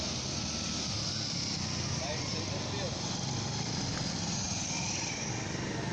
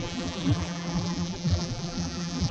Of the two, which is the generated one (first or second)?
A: second